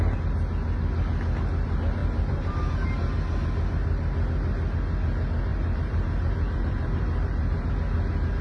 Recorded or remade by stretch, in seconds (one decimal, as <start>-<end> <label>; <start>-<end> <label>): 0.0-2.0 recorded; 2.0-2.7 remade; 2.7-5.5 recorded; 5.5-7.7 remade; 7.7-8.4 recorded